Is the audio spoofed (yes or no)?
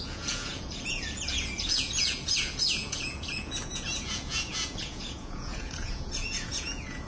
yes